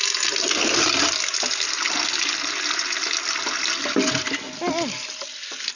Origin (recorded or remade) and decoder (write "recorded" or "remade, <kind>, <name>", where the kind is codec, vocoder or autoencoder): recorded